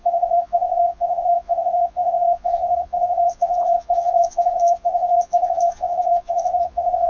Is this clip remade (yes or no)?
yes